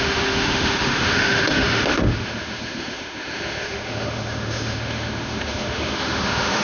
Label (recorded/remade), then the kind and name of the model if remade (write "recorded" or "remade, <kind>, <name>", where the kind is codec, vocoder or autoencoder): remade, autoencoder, DAC-VAE